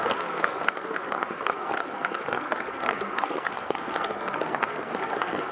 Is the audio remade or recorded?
remade